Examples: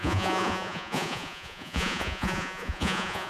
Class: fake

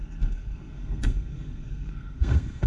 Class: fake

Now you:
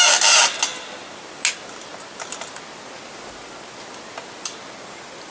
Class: real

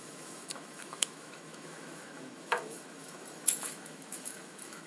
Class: fake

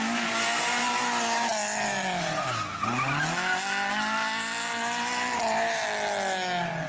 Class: real